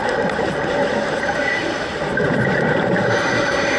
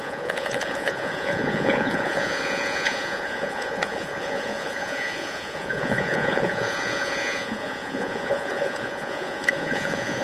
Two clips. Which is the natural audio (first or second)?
first